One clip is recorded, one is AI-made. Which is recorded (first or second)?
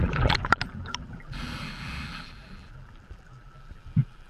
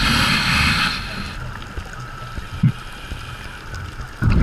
second